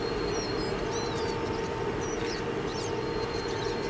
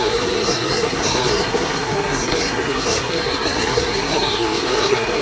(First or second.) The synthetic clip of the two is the second